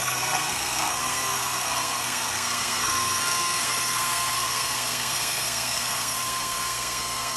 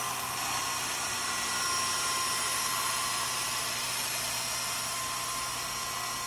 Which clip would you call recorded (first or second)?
second